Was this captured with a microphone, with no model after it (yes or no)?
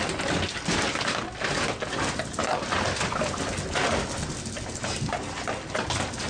yes